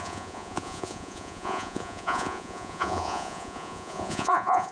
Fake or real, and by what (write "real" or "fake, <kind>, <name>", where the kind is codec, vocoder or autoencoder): fake, vocoder, Vocos